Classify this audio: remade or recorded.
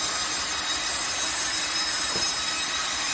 recorded